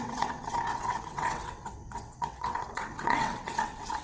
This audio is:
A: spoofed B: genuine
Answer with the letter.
A